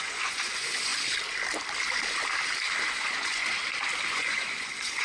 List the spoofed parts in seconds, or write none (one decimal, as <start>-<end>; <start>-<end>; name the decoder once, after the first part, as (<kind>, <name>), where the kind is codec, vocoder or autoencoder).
0.0-0.9 (vocoder, Vocos); 2.8-3.6; 4.1-5.0